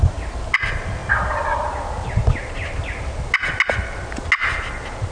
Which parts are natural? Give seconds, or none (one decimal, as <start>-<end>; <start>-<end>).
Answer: 0.0-5.1